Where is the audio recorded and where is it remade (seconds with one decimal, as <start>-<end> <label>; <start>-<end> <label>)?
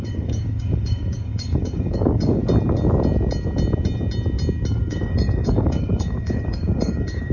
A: 0.0-2.4 remade; 2.4-4.7 recorded; 4.7-7.3 remade